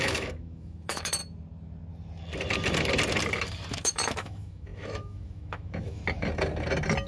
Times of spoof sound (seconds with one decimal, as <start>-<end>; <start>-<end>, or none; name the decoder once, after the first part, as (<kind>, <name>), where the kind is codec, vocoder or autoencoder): 0.0-1.2 (autoencoder, DAC-VAE); 3.7-6.0